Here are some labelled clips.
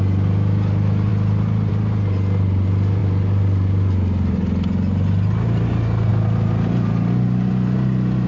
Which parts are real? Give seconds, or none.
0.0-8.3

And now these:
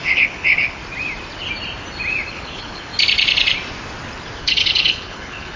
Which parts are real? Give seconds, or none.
0.8-2.3; 2.9-4.4

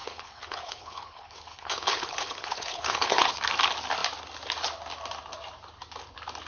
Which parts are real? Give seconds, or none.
3.3-6.5

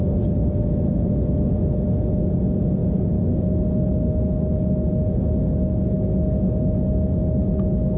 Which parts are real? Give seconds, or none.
0.0-8.0

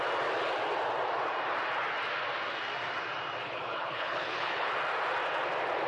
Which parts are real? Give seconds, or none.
0.0-3.4; 4.7-5.9

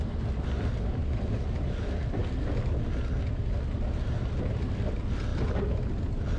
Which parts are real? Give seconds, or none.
0.0-6.4

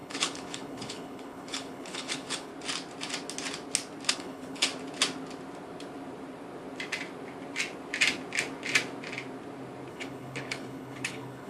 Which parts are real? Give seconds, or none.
2.5-4.1; 4.7-9.9

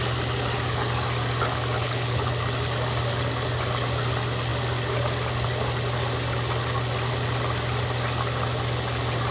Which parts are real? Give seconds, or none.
0.0-1.8; 2.3-9.3